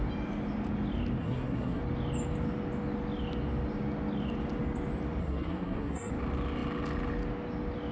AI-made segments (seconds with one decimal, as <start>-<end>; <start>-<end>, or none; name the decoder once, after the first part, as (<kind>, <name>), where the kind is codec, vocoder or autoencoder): 1.2-1.8 (codec, SNAC); 5.2-6.1